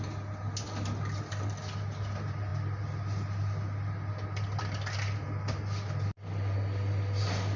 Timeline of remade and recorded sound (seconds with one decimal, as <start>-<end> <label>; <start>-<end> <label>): 0.0-7.6 recorded

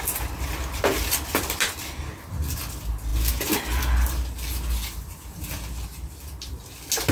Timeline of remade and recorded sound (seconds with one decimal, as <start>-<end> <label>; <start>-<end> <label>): 0.0-7.1 recorded

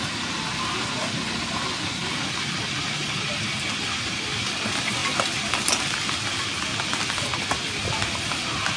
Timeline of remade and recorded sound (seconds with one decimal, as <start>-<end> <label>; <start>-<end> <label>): 0.0-8.8 recorded